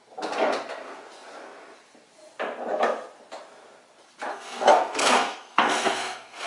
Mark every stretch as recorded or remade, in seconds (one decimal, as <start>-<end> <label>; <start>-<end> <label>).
0.0-4.3 recorded; 4.3-6.5 remade